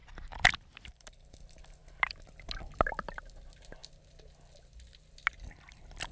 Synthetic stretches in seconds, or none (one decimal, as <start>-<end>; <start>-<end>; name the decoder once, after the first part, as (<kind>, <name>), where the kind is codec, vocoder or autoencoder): none